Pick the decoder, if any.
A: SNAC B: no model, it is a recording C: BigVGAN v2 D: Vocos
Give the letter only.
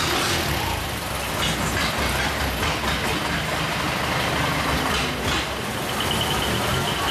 B